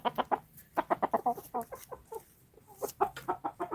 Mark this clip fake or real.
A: real